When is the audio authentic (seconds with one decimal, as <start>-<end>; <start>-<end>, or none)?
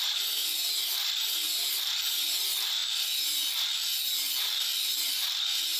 2.8-4.6